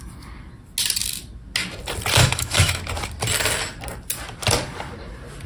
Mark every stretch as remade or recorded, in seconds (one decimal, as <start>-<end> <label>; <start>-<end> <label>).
0.0-2.2 recorded; 2.2-2.8 remade; 2.8-5.5 recorded